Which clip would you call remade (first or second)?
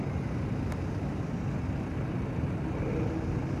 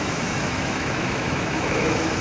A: second